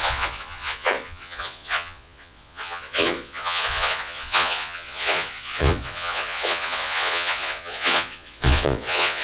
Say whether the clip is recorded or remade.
remade